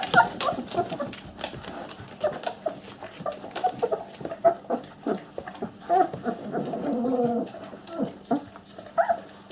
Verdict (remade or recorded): recorded